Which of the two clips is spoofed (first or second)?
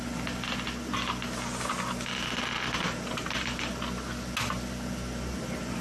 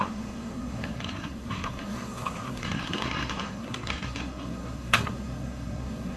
second